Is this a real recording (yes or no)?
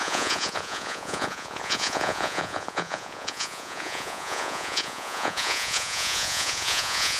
no